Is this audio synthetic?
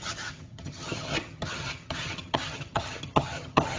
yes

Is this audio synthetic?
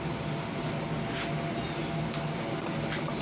no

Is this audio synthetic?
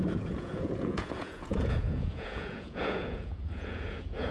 yes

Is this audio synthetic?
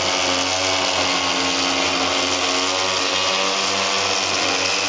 no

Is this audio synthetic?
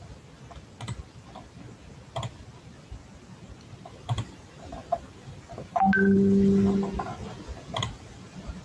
no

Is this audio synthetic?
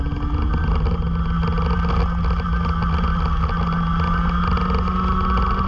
no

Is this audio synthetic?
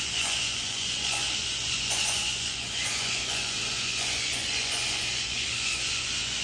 yes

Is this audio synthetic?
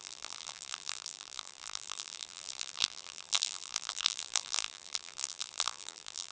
yes